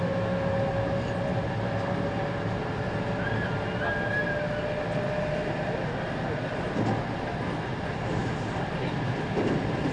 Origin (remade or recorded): recorded